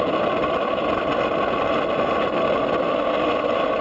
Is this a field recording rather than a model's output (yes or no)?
yes